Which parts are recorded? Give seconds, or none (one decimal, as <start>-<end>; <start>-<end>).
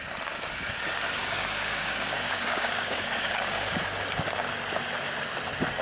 0.0-1.2; 3.7-5.8